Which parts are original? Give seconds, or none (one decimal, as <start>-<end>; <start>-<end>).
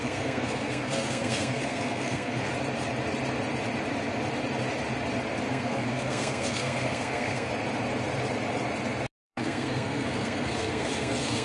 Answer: 2.5-5.5; 7.5-9.2